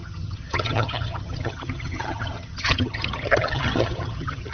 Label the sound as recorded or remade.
remade